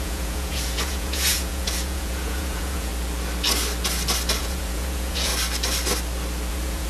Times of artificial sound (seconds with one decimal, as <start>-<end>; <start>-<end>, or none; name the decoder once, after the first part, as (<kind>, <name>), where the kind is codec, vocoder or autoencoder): 0.0-2.9 (vocoder, Vocos); 4.4-5.3; 6.5-6.9